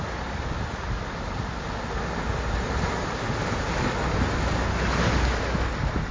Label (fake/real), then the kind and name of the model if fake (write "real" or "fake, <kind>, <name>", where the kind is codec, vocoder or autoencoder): real